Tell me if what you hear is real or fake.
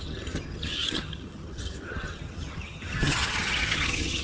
fake